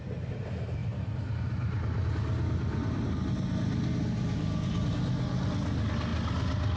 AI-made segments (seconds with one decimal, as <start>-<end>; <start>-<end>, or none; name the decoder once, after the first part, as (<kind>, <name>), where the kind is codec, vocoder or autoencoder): none